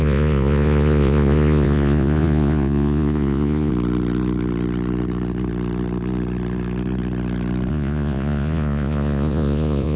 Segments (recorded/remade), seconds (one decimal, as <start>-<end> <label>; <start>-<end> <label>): 0.0-3.7 remade; 3.7-7.7 recorded; 7.7-10.0 remade